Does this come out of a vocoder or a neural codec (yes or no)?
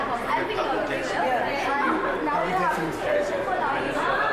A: yes